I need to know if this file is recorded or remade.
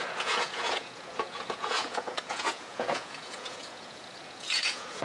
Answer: remade